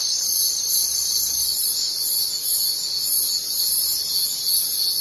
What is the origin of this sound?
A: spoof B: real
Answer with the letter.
B